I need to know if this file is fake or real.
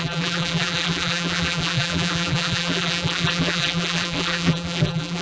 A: fake